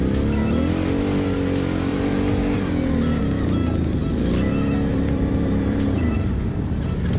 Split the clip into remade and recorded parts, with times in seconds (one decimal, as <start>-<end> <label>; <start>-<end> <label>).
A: 0.0-1.9 recorded; 1.9-3.2 remade; 3.2-4.9 recorded; 4.9-6.7 remade; 6.7-7.2 recorded